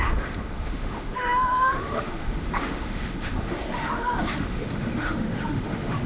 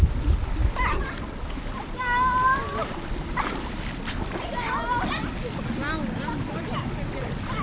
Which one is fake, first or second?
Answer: first